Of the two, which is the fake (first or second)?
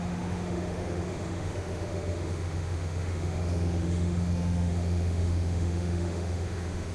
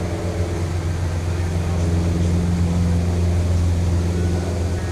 first